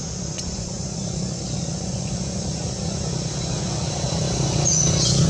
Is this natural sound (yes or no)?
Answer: no